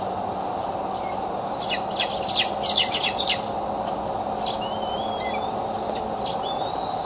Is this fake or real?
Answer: real